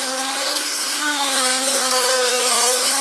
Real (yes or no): no